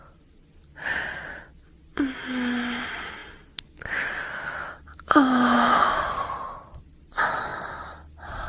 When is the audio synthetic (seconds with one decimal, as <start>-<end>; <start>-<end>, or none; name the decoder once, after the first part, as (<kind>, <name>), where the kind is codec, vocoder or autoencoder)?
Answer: 4.9-6.0 (autoencoder, DAC-VAE)